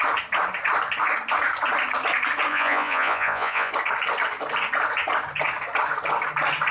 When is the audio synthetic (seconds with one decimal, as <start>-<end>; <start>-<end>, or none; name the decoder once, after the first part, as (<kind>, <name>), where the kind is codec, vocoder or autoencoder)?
2.5-3.7 (vocoder, Vocos)